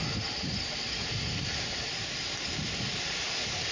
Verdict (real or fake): real